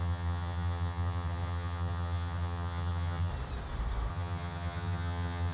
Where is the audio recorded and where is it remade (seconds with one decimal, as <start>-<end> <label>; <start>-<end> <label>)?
0.0-3.3 remade; 3.3-4.1 recorded; 4.1-5.5 remade